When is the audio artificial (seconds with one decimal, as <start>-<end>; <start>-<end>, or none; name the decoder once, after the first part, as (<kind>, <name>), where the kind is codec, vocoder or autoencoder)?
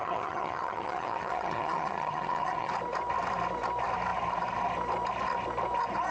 0.0-2.7 (vocoder, HiFi-GAN)